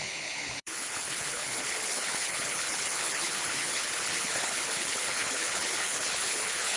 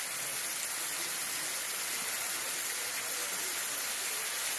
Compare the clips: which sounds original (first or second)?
second